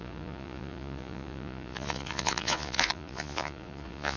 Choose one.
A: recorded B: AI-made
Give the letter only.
B